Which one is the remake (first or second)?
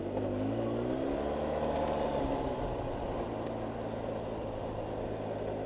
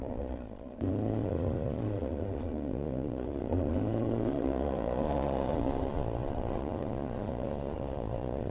second